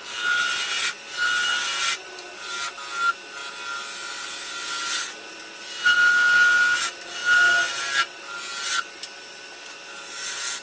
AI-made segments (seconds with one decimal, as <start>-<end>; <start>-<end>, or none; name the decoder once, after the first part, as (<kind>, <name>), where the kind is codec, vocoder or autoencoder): none